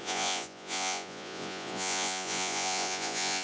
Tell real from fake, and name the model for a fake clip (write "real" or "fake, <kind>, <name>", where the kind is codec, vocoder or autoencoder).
fake, vocoder, Vocos